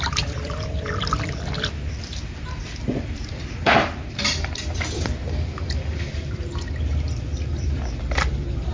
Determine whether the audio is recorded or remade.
remade